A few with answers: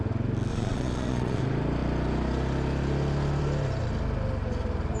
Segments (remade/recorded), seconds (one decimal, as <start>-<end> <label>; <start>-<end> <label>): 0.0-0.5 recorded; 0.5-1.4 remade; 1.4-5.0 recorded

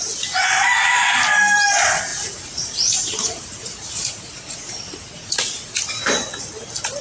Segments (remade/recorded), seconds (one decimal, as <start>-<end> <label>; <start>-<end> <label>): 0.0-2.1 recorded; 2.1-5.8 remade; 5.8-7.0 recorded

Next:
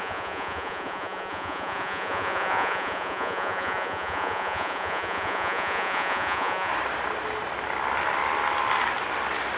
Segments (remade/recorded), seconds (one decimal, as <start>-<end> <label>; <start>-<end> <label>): 0.0-6.7 remade; 6.7-9.6 recorded

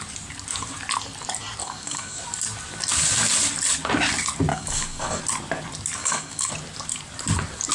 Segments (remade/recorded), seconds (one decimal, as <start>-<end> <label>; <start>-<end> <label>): 0.0-1.6 recorded; 1.6-2.2 remade; 2.2-4.5 recorded; 4.5-5.2 remade; 5.2-6.0 recorded; 6.0-6.5 remade; 6.5-7.7 recorded